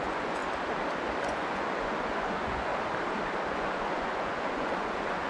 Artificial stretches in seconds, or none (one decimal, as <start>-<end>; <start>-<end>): 0.0-0.4; 1.2-2.7; 3.5-5.3